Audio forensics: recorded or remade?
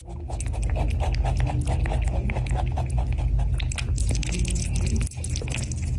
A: recorded